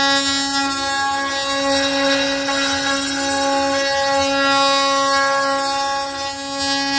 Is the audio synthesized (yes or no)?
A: no